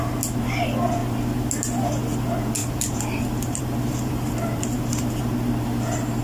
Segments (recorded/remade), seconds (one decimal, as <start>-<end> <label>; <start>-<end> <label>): 0.0-2.6 recorded; 2.6-5.2 remade; 5.2-6.2 recorded